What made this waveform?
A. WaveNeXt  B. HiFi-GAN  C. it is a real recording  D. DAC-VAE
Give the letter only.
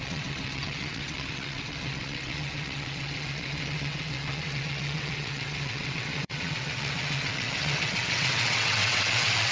A